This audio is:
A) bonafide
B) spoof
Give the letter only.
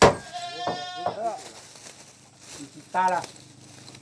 A